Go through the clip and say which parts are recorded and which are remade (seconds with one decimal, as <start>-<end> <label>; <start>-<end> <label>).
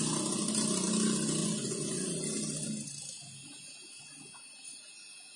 0.0-1.4 recorded; 1.4-2.2 remade; 2.2-5.4 recorded